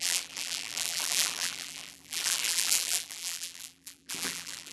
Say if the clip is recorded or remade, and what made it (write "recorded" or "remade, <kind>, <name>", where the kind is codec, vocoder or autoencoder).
remade, vocoder, BigVGAN v2